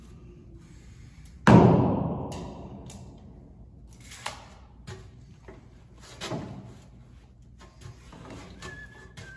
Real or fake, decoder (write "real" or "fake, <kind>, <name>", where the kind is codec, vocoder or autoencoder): real